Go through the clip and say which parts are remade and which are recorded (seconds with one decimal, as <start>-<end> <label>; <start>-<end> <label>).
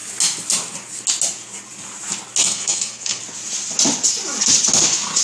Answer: 0.0-2.4 recorded; 2.4-3.2 remade; 3.2-5.2 recorded